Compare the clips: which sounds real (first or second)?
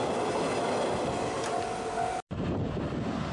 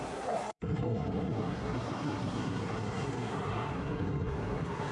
first